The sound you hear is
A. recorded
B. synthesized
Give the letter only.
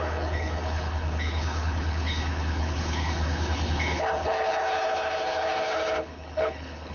B